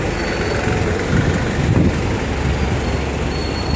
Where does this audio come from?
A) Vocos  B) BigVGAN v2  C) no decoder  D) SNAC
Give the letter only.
C